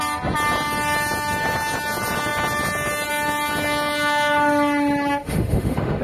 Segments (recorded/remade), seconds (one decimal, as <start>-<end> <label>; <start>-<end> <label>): 0.0-5.2 recorded; 5.2-6.0 remade